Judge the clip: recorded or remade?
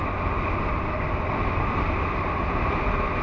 recorded